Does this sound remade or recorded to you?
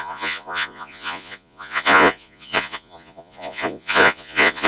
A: remade